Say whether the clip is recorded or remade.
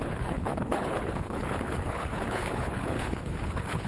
remade